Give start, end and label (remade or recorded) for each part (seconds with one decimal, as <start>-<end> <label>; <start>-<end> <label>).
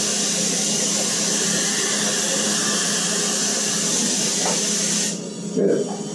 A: 0.0-6.1 recorded